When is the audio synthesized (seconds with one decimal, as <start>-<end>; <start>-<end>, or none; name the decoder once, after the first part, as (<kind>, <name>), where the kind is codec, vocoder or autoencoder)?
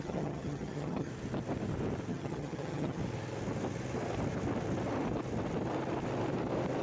0.0-1.1 (vocoder, HiFi-GAN); 2.1-3.0